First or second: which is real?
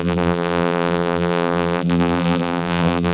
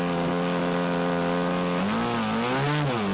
second